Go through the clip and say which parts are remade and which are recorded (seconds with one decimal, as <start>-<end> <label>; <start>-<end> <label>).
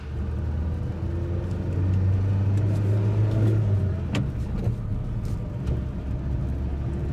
0.0-7.1 recorded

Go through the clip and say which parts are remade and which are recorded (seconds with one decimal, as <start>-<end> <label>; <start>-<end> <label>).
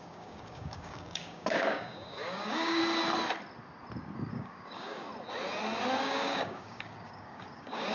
0.0-2.8 remade; 2.8-4.3 recorded; 4.3-5.1 remade; 5.1-6.0 recorded; 6.0-7.9 remade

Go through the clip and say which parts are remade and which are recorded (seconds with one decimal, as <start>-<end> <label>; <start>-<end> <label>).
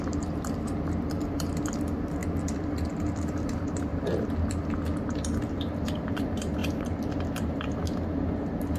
0.0-2.2 remade; 2.2-3.2 recorded; 3.2-3.9 remade; 3.9-5.5 recorded; 5.5-6.6 remade; 6.6-7.2 recorded; 7.2-8.8 remade